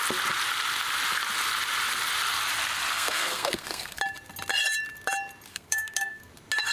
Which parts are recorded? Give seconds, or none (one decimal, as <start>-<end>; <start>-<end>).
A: 0.0-2.9; 4.0-5.5; 6.3-6.7